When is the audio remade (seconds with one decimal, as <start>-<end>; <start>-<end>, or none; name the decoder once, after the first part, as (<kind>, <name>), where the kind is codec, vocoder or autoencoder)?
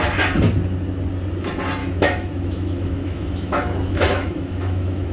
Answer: 1.8-5.1 (autoencoder, DAC-VAE)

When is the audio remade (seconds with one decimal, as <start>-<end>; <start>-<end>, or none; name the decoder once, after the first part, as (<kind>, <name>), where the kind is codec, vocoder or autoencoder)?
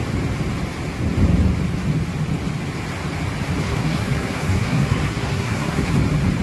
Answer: 3.6-5.9 (codec, SNAC)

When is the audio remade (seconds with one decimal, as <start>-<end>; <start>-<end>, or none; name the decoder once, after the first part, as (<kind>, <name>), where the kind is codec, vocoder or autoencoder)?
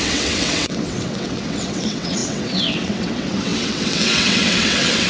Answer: 0.0-5.1 (vocoder, WaveNeXt)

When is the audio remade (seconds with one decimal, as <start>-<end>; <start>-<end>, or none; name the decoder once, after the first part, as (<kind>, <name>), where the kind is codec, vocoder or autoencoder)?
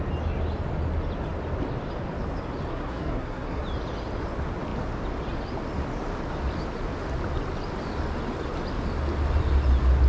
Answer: 2.7-3.6 (codec, SNAC)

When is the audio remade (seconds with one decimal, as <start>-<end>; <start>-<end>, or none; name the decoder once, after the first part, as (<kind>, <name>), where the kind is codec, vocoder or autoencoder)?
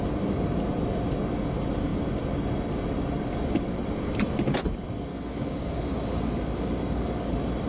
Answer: 5.1-7.3 (codec, DAC)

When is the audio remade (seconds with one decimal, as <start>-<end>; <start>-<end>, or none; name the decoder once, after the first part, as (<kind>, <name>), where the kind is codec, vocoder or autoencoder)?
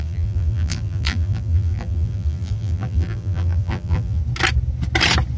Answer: 0.0-4.2 (vocoder, BigVGAN v2)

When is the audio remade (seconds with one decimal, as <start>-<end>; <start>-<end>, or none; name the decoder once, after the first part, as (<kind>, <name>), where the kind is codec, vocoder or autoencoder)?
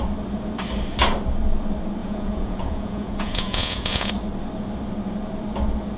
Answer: 2.0-4.1 (vocoder, Vocos)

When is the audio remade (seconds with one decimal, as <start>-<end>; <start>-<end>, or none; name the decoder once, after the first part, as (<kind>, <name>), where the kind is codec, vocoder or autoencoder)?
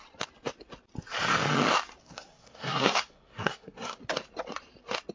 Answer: 2.0-4.0 (codec, SNAC)